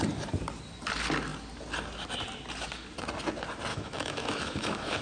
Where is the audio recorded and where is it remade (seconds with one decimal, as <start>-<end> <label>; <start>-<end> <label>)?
0.0-3.7 recorded; 3.7-5.0 remade